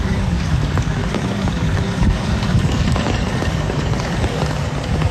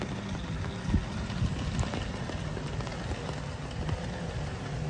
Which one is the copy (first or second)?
first